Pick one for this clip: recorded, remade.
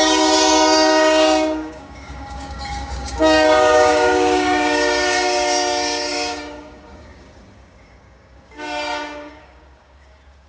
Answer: remade